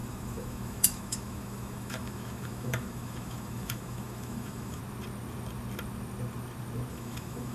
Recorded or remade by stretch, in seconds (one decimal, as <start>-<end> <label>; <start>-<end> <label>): 0.0-4.8 remade; 4.8-6.9 recorded; 6.9-7.5 remade